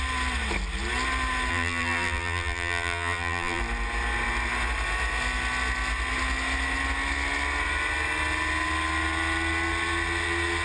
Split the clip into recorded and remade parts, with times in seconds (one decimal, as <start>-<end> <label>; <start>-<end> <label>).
0.0-1.5 recorded; 1.5-3.6 remade; 3.6-10.6 recorded